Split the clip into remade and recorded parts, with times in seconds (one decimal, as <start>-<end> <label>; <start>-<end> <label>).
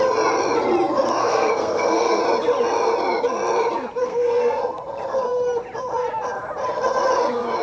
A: 0.0-1.2 recorded; 1.2-2.2 remade; 2.2-4.0 recorded; 4.0-4.6 remade; 4.6-7.6 recorded